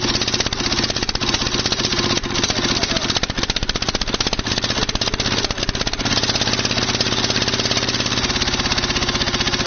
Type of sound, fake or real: real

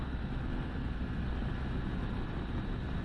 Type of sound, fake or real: real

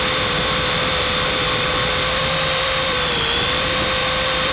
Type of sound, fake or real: fake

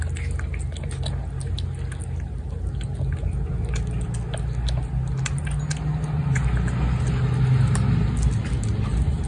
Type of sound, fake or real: real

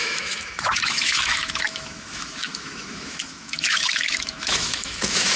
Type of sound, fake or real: fake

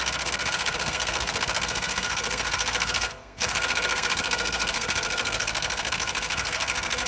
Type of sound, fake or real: fake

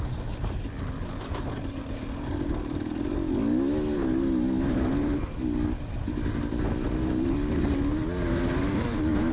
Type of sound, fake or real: real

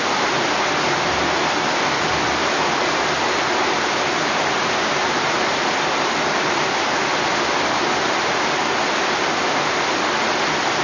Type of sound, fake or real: real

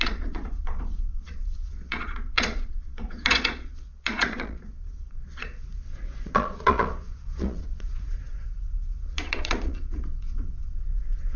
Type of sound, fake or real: fake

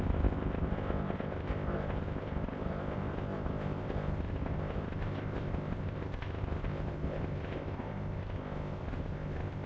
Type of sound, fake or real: fake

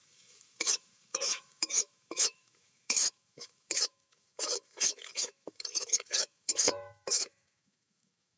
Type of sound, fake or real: fake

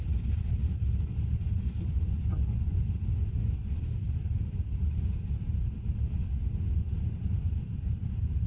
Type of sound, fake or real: real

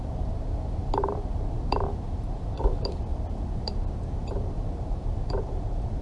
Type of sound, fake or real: fake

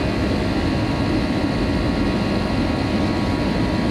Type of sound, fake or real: real